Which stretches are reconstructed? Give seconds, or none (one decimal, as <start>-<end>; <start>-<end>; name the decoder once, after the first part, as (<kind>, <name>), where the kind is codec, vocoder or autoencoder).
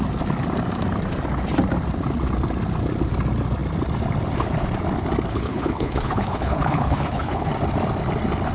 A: 5.3-7.5 (codec, HILCodec)